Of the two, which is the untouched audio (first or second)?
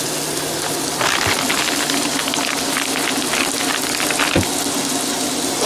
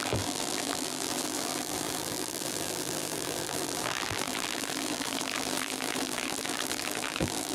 first